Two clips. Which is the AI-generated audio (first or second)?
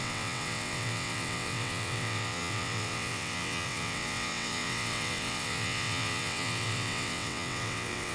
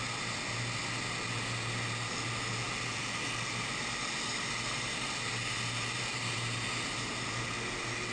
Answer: first